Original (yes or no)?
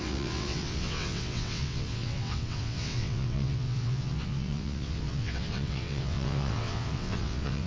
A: no